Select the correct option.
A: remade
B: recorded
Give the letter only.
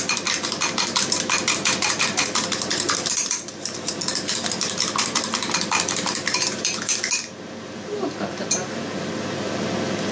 A